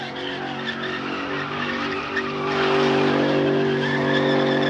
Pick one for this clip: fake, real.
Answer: real